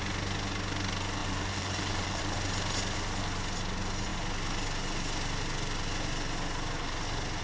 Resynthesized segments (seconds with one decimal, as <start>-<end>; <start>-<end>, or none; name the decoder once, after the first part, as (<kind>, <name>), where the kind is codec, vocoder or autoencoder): 1.2-2.2 (vocoder, BigVGAN v2)